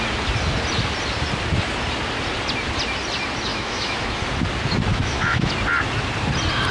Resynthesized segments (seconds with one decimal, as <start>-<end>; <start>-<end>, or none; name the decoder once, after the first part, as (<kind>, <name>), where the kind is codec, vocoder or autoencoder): 3.5-4.2 (autoencoder, DAC-VAE); 4.9-5.5